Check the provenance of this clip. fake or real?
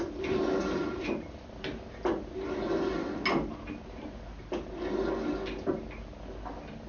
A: real